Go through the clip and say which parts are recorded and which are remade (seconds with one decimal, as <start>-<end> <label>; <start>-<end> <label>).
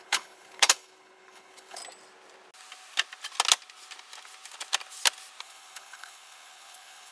0.0-1.8 remade; 1.8-5.4 recorded; 5.4-7.1 remade